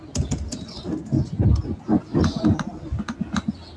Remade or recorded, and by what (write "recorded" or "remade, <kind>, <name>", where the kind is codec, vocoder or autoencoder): recorded